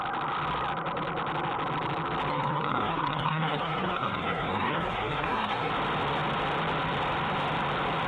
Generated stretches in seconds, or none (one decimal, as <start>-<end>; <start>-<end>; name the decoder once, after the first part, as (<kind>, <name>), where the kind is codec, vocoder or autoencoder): 2.3-5.7 (codec, SNAC)